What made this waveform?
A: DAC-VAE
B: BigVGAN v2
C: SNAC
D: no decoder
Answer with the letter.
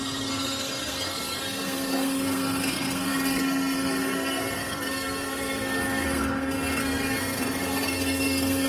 C